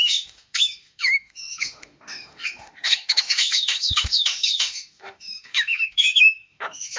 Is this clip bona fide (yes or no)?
no